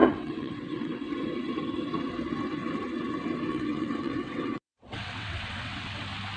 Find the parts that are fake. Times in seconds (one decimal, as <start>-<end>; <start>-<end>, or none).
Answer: 0.0-1.1; 3.5-6.0